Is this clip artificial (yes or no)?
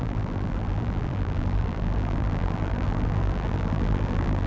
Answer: yes